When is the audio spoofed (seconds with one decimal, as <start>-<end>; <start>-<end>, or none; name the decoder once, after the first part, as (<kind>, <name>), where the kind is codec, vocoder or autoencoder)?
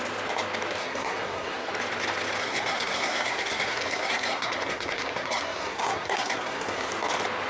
0.8-1.7 (codec, SNAC); 2.4-6.9